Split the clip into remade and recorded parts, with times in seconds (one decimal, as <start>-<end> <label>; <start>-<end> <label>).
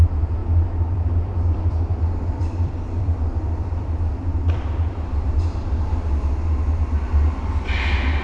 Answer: 0.0-0.4 recorded; 0.4-5.3 remade; 5.3-8.2 recorded